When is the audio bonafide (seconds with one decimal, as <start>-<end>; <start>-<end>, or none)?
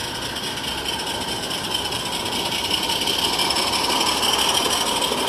3.2-5.3